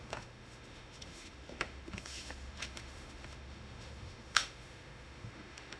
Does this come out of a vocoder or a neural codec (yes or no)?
yes